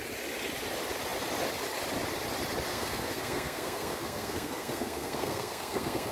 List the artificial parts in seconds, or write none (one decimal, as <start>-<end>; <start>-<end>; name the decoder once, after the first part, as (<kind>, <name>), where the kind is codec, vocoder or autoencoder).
2.7-6.1 (codec, SNAC)